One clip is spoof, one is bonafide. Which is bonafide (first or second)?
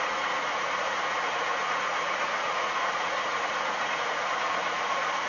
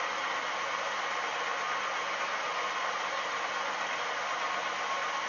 second